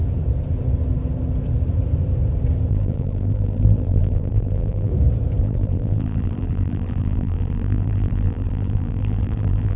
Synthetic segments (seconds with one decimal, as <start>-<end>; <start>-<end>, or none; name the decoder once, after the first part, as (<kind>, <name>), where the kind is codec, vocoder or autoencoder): 2.7-4.9 (vocoder, BigVGAN v2); 5.4-9.8